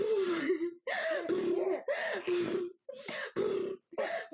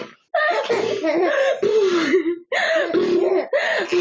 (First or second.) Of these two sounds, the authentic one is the second